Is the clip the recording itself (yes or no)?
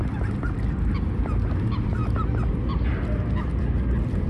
yes